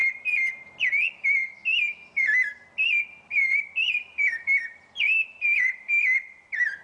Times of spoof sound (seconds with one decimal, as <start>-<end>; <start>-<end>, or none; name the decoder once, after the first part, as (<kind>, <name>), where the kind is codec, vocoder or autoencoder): 3.3-6.0 (vocoder, BigVGAN v2)